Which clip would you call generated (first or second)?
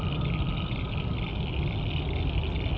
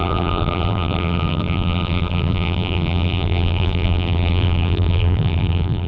second